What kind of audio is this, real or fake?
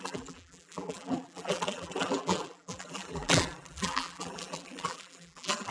fake